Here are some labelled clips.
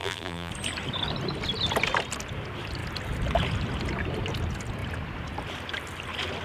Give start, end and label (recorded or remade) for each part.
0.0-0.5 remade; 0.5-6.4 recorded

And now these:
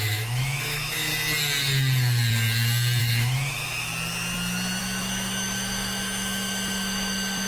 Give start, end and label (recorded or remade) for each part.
0.0-1.1 remade; 1.1-3.0 recorded; 3.0-3.9 remade; 3.9-4.8 recorded; 4.8-7.5 remade

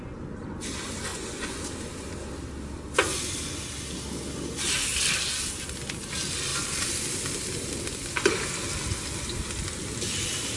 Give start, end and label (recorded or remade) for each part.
0.0-1.1 recorded; 1.1-1.6 remade; 1.6-10.6 recorded

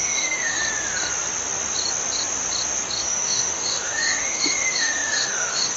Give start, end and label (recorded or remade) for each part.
0.0-0.6 remade; 0.6-3.0 recorded; 3.0-5.8 remade

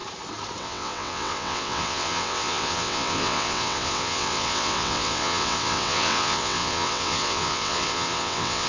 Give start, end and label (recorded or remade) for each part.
0.0-0.6 recorded; 0.6-8.7 remade